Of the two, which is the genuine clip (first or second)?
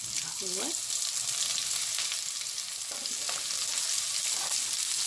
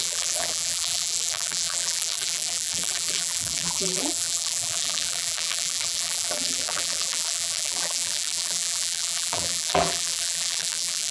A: first